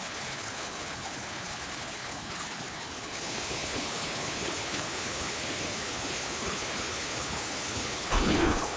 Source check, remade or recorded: remade